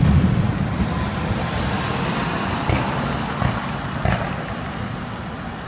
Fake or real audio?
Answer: real